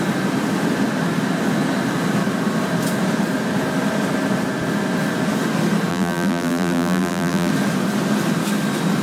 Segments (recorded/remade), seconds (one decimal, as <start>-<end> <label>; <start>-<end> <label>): 0.0-5.9 recorded; 5.9-7.5 remade; 7.5-9.0 recorded